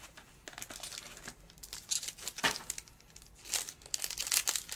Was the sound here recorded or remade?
recorded